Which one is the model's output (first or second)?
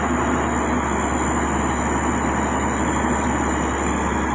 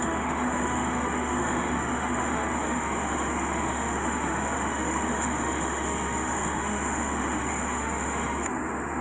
second